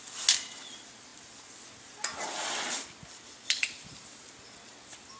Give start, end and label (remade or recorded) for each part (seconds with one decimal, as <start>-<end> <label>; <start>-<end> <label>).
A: 0.0-5.2 recorded